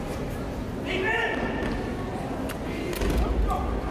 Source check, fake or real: real